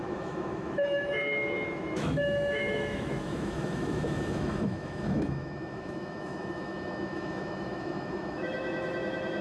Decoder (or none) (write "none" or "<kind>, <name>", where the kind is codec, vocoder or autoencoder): autoencoder, DAC-VAE